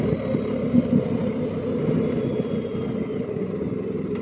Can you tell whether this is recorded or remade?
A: recorded